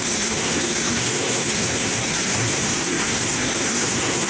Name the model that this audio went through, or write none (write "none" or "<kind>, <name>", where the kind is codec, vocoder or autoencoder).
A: codec, SNAC